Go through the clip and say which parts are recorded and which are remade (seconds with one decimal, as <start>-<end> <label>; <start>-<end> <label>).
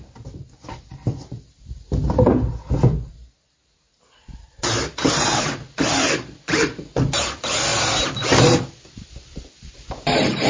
0.0-10.5 recorded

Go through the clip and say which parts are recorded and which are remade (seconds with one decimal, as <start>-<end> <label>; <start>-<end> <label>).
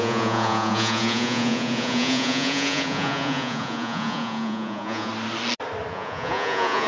0.0-5.1 remade; 5.1-5.9 recorded; 5.9-6.9 remade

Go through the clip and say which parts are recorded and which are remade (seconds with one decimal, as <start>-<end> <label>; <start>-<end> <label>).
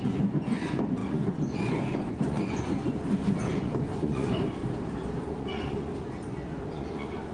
0.0-4.6 remade; 4.6-5.2 recorded; 5.2-5.9 remade; 5.9-6.7 recorded; 6.7-7.3 remade